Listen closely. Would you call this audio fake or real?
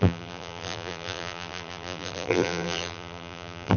fake